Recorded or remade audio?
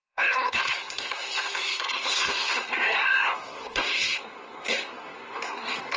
remade